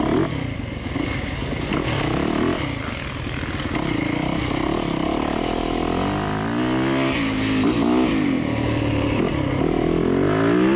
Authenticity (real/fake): real